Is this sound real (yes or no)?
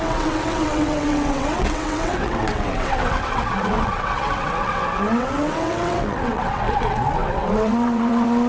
no